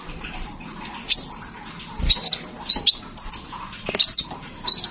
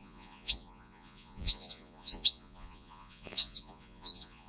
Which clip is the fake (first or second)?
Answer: second